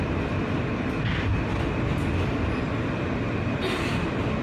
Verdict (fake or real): real